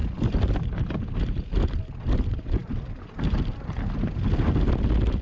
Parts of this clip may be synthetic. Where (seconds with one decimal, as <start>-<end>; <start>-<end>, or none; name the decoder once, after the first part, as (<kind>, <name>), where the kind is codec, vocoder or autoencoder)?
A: none